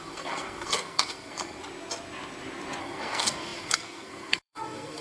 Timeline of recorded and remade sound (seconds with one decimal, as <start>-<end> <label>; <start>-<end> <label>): 0.0-1.6 remade; 1.6-2.8 recorded; 2.8-5.0 remade